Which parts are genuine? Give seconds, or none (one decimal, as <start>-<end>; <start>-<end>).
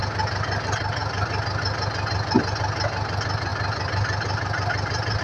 0.0-3.5